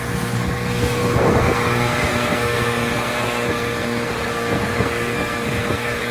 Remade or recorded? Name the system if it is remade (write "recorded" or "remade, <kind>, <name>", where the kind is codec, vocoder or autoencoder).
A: remade, codec, SNAC